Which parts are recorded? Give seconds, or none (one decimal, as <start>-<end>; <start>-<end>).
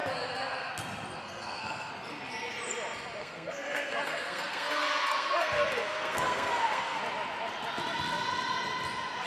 0.7-1.2; 1.9-3.2; 7.0-9.3